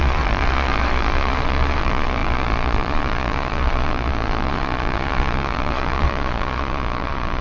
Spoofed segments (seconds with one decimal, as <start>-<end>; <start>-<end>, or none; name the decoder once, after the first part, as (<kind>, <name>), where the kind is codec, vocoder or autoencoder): 0.0-7.4 (vocoder, Vocos)